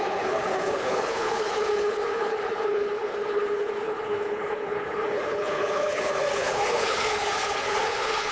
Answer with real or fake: fake